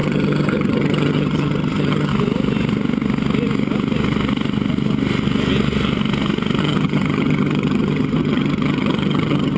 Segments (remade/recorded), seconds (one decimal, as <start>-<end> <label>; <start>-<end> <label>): 0.0-2.1 remade; 2.1-6.6 recorded; 6.6-9.6 remade